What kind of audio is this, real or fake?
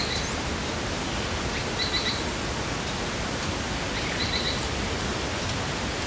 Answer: real